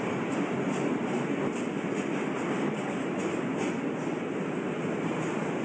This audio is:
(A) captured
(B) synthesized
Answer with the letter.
A